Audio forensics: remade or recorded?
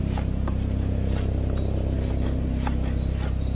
remade